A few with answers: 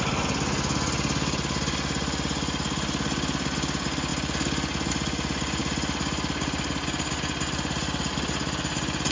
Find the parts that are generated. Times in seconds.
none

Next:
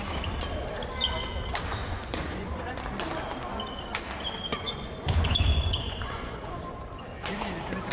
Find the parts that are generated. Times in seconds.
1.8-2.8; 4.5-6.8

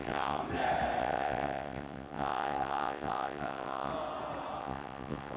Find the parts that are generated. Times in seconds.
0.0-0.4; 1.0-3.9; 4.6-5.4

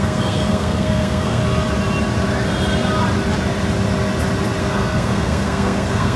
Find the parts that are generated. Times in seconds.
0.0-1.4; 4.6-6.2

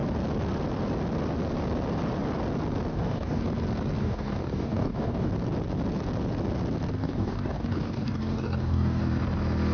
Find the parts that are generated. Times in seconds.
2.9-3.4; 4.0-5.3; 7.0-9.0

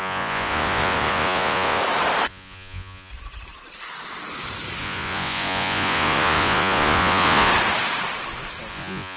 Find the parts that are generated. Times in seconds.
0.0-1.8; 2.3-3.1; 4.8-7.5; 8.7-9.2

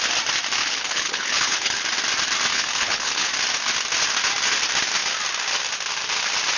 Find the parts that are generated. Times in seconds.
0.6-1.8; 2.5-3.3